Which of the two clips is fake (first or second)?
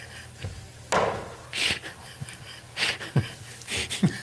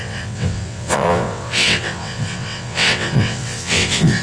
second